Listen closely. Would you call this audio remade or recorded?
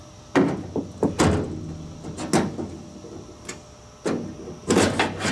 recorded